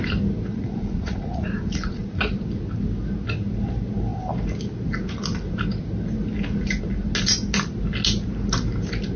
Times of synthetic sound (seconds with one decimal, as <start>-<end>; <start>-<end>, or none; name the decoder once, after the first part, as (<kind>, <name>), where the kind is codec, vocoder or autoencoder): 0.5-2.2 (vocoder, Vocos)